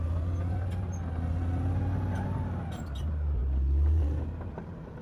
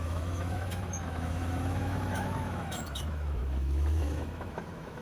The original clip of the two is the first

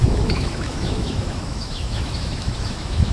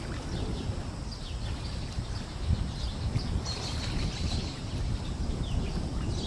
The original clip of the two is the second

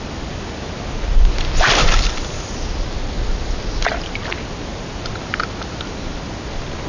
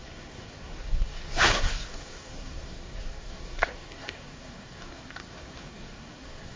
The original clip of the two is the first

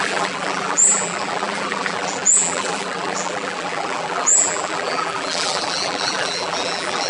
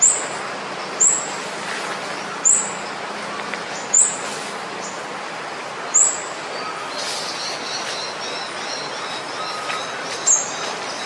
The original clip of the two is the second